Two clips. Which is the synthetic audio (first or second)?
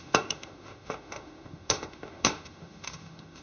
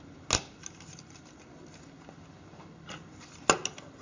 first